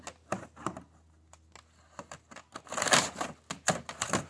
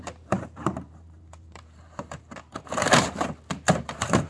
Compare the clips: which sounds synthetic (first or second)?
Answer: second